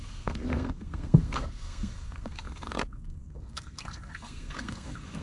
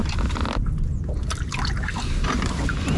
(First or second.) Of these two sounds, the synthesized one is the first